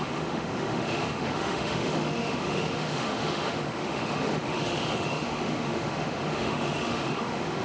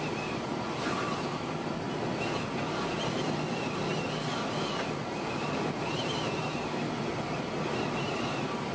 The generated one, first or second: first